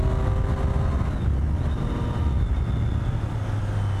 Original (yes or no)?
yes